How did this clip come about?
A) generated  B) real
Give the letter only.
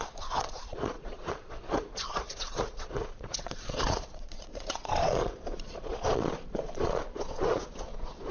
A